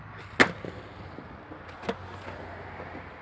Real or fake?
real